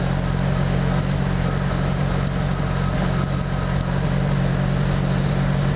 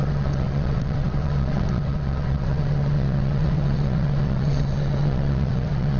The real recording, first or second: first